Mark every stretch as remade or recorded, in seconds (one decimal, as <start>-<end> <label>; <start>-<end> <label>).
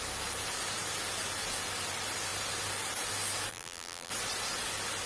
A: 0.0-3.5 recorded; 3.5-4.1 remade; 4.1-5.1 recorded